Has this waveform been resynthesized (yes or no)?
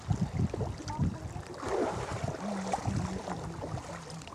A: no